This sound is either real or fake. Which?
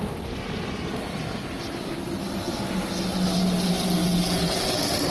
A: real